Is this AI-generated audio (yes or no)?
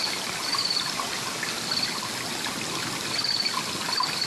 no